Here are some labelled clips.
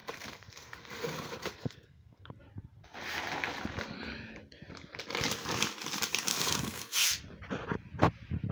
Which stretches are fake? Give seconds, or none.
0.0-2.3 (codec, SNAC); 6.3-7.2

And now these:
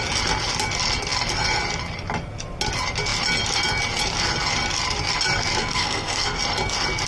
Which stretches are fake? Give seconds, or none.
5.6-6.4 (codec, SNAC)

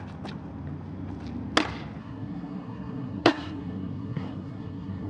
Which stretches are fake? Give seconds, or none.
2.0-5.1 (codec, SNAC)

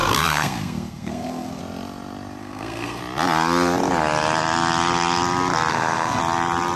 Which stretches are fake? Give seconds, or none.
0.0-1.6 (codec, SNAC); 2.4-3.0; 5.7-6.2